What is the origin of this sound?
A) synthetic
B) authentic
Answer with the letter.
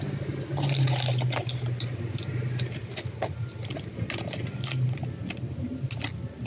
B